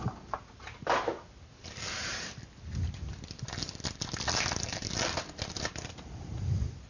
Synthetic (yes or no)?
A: no